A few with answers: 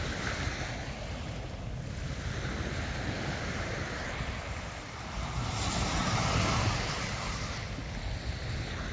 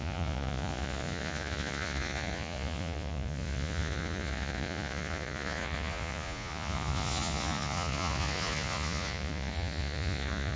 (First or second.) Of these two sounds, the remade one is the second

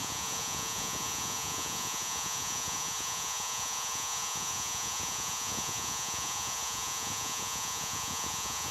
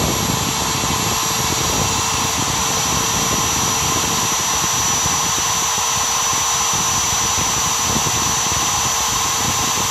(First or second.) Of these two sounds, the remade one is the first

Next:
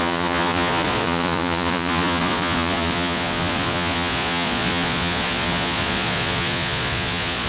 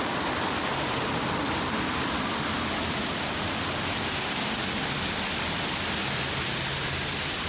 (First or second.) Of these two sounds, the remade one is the first